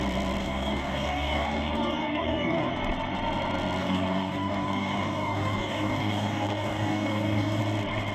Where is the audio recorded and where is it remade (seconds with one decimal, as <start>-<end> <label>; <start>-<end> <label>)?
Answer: 0.0-0.4 recorded; 0.4-2.7 remade; 2.7-3.8 recorded; 3.8-7.6 remade; 7.6-8.1 recorded